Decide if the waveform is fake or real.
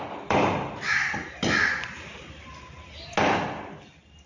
real